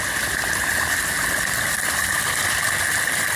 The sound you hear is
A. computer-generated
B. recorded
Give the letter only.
B